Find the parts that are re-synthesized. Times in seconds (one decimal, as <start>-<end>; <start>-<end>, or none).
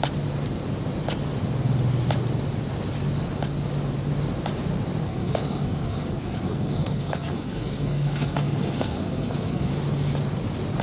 5.0-9.7